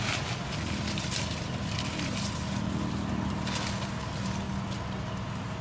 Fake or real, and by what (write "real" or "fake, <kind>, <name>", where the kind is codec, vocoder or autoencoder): real